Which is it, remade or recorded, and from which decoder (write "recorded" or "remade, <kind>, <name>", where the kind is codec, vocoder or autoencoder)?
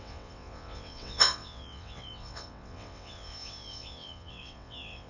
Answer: remade, vocoder, WaveNeXt